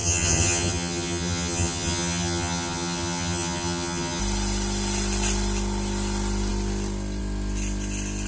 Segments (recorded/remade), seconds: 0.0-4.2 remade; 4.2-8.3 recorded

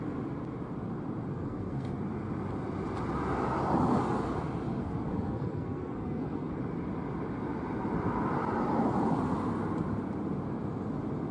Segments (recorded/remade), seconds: 0.0-1.3 recorded; 1.3-2.0 remade; 2.0-4.8 recorded; 4.8-6.6 remade; 6.6-11.3 recorded

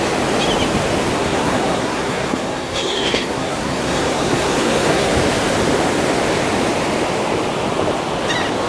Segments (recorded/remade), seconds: 0.0-1.2 recorded; 1.2-5.1 remade; 5.1-8.7 recorded

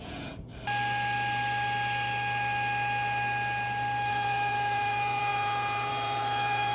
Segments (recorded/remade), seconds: 0.0-0.5 remade; 0.5-4.1 recorded; 4.1-6.7 remade

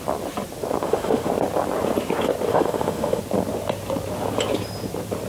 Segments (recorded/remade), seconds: 0.0-0.8 recorded; 0.8-1.3 remade; 1.3-2.5 recorded; 2.5-3.2 remade; 3.2-5.3 recorded